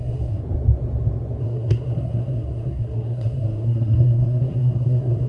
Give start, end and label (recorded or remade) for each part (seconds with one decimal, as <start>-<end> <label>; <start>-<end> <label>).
0.0-0.4 remade; 0.4-1.4 recorded; 1.4-5.3 remade